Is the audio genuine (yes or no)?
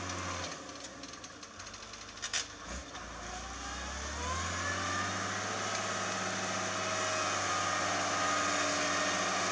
yes